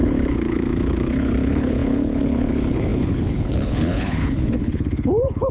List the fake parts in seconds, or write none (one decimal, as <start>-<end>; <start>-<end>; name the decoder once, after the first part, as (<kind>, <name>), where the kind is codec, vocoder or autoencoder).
0.0-5.5 (codec, HILCodec)